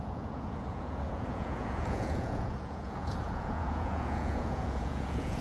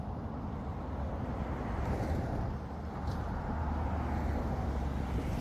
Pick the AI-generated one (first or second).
first